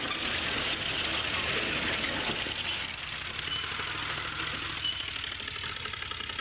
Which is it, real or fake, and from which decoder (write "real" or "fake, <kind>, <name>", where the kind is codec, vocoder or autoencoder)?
real